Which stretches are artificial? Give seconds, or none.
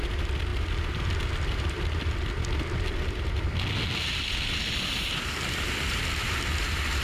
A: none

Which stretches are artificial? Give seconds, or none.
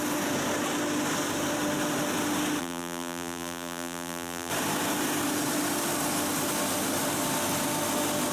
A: 2.6-4.5 (vocoder, BigVGAN v2)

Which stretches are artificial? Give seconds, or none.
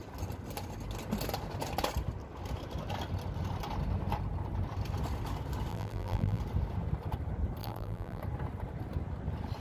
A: 5.7-6.4 (vocoder, BigVGAN v2); 7.6-8.2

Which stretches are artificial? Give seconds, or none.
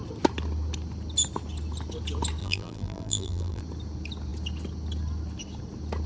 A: 2.4-3.6 (vocoder, BigVGAN v2)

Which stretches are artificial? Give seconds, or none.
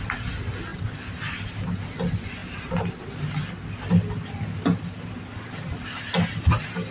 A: none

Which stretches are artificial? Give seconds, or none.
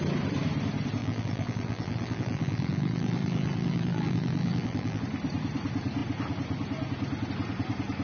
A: 1.0-5.0 (vocoder, BigVGAN v2)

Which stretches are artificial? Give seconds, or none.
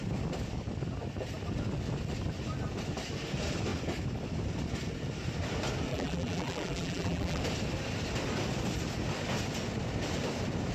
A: 5.9-7.4 (vocoder, BigVGAN v2)